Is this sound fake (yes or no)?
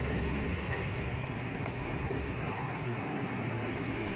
yes